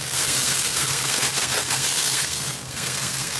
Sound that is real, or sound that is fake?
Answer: fake